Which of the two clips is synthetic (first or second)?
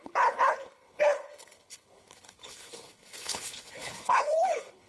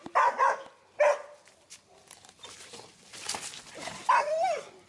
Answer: first